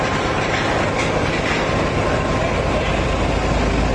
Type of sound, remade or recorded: recorded